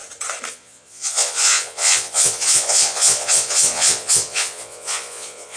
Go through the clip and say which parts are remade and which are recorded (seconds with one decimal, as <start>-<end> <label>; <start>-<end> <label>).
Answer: 0.0-0.5 recorded; 0.5-5.6 remade